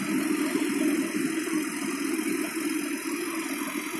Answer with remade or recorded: recorded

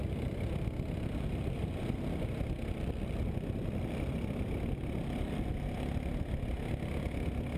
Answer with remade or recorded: recorded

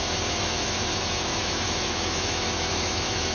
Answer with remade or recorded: remade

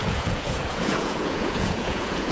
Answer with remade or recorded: remade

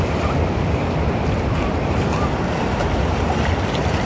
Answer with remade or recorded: recorded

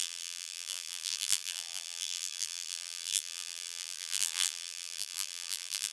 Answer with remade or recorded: remade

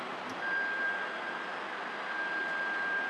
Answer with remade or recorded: recorded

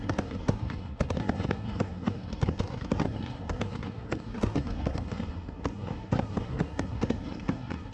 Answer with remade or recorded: remade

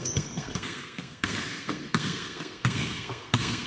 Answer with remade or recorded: remade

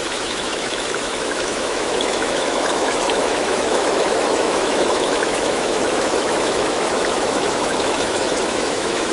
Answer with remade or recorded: remade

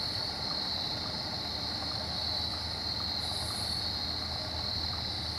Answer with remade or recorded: recorded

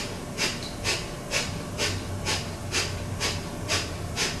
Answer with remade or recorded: remade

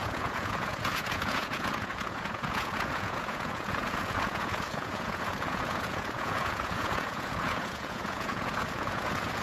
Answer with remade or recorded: remade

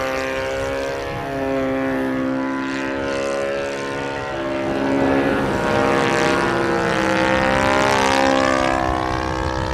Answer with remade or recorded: recorded